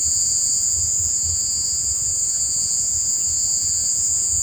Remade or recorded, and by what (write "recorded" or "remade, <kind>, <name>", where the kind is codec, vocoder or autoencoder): remade, vocoder, Vocos